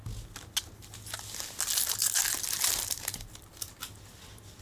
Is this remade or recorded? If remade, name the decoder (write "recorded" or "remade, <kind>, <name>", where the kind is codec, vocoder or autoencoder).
recorded